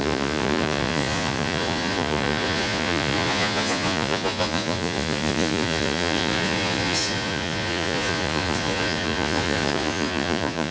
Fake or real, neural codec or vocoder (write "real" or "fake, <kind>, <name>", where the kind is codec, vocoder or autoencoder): fake, vocoder, Vocos